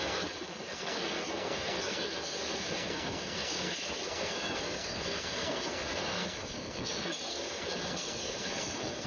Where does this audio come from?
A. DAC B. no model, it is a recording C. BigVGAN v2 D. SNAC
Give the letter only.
D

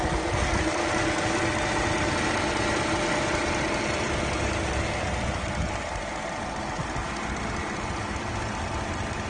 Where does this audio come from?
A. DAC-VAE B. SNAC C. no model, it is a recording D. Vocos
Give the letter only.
C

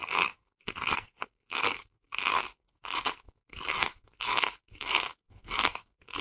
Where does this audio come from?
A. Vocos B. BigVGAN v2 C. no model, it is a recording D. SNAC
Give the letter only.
D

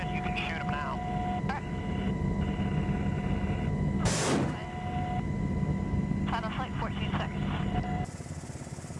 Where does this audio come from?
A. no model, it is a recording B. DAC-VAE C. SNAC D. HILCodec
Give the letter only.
A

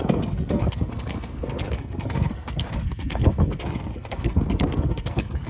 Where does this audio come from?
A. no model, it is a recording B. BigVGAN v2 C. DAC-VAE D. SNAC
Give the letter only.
D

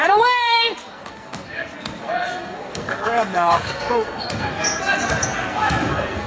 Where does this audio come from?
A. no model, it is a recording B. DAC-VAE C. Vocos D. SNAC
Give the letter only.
D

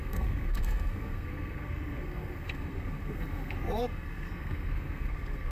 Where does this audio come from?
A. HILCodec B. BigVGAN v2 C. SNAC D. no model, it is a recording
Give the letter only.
C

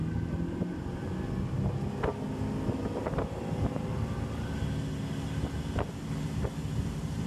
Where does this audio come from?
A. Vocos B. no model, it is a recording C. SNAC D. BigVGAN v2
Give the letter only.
B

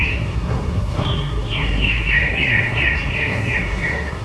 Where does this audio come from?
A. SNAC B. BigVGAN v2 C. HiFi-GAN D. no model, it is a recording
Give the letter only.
A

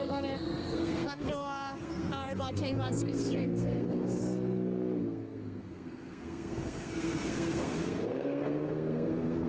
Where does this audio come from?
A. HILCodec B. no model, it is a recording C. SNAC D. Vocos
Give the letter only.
C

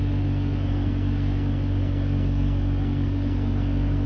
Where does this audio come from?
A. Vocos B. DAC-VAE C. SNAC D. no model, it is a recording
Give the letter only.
C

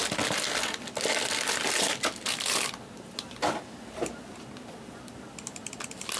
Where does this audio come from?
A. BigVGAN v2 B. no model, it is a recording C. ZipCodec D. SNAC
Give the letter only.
B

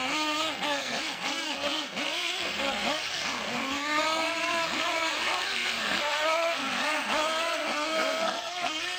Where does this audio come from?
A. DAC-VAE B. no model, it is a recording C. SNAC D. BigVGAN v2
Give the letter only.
C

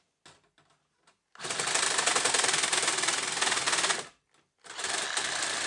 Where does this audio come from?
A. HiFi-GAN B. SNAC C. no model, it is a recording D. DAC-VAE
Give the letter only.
C